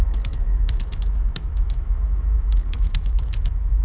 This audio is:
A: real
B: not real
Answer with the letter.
B